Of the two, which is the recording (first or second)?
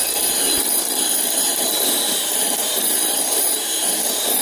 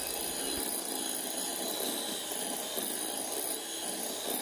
second